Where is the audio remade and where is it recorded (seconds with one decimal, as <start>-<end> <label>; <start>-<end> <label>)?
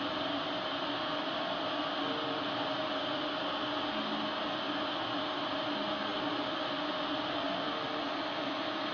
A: 0.0-8.9 recorded